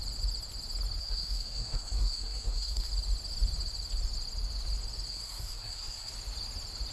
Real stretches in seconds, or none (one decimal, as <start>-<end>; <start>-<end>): 0.0-1.0; 2.9-5.1; 6.1-6.9